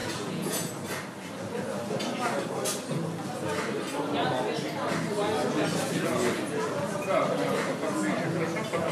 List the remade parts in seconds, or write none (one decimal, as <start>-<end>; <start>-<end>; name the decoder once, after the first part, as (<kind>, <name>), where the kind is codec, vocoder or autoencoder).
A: 0.0-0.7 (vocoder, Vocos)